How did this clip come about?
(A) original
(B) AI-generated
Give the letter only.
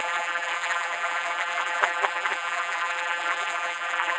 B